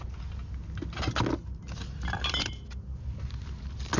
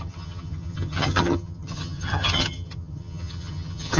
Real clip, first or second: first